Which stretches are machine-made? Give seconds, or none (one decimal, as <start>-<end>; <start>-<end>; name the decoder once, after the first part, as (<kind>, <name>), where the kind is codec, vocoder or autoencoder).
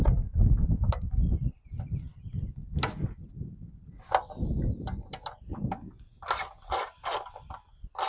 none